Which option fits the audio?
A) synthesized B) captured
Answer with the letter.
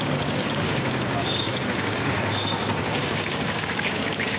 A